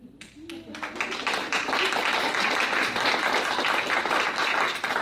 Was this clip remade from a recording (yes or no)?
no